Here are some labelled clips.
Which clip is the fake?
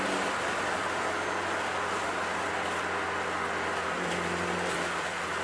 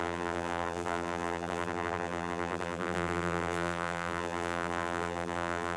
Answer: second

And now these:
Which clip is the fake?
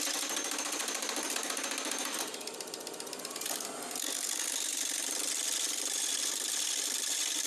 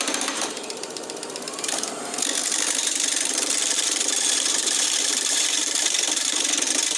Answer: second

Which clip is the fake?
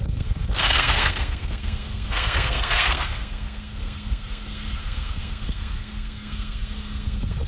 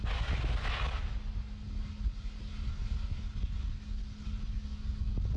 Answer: first